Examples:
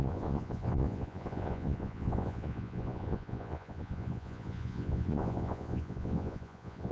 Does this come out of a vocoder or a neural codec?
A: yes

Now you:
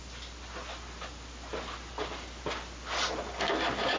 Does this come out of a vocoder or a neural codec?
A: no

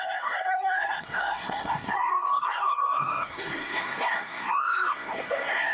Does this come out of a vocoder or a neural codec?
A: yes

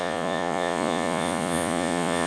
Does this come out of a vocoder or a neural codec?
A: yes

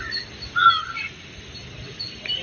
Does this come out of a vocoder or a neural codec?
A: no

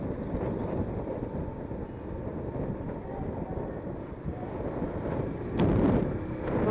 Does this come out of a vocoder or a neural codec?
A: no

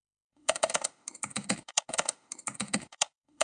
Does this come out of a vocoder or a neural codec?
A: yes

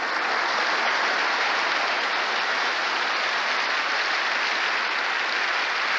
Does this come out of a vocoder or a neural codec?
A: no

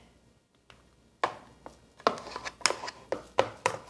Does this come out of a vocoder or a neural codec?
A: no